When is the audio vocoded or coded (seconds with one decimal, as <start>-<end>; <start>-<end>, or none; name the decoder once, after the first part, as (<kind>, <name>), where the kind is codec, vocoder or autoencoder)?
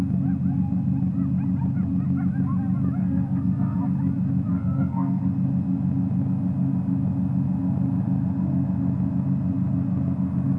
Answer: 3.0-3.8 (codec, SNAC); 4.5-5.2